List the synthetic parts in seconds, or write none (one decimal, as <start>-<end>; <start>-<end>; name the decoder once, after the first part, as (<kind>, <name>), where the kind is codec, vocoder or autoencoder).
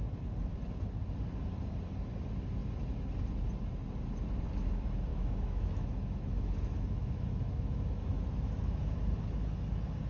5.1-8.8 (autoencoder, DAC-VAE)